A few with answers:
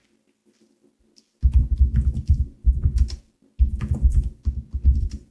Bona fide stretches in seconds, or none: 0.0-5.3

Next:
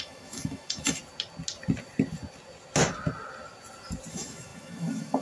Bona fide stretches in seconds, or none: 1.0-4.1

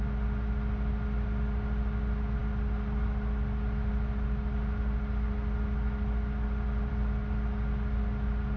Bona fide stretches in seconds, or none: 0.0-8.6

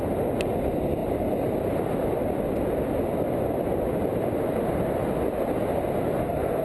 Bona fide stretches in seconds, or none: 0.0-6.6

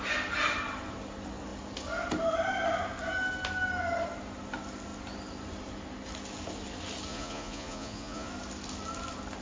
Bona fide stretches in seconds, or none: 0.0-7.1; 8.3-9.4

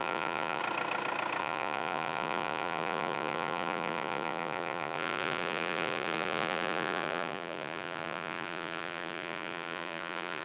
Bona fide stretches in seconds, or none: 0.6-1.4